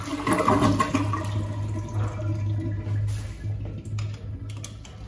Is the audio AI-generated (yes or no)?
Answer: no